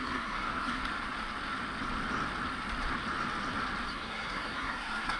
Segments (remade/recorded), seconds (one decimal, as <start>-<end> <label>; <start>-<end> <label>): 0.0-0.8 remade; 0.8-3.9 recorded; 3.9-5.2 remade